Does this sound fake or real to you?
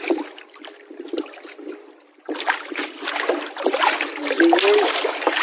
real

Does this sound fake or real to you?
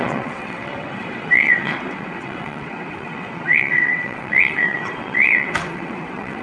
fake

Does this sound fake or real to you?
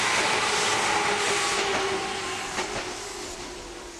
real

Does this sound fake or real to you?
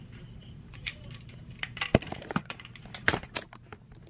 fake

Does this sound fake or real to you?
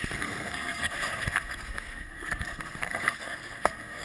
fake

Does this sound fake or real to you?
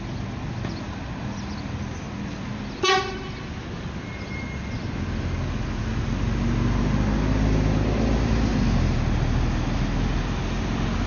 real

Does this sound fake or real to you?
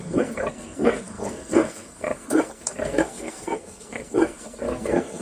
fake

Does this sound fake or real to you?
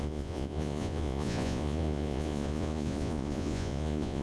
fake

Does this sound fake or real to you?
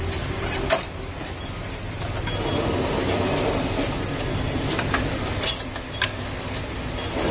real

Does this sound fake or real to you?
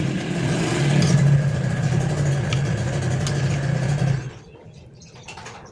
real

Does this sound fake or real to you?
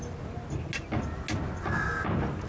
real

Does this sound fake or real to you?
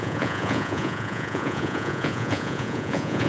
fake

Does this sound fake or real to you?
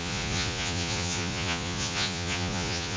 fake